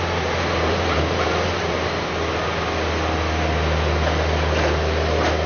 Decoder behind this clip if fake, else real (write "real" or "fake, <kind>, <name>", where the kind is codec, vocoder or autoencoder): real